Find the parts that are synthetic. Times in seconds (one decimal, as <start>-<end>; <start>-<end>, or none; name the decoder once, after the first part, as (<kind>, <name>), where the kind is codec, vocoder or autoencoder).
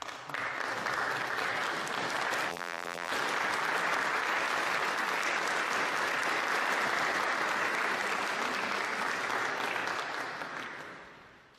2.5-3.1 (vocoder, BigVGAN v2)